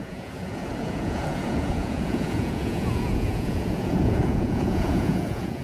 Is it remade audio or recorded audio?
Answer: remade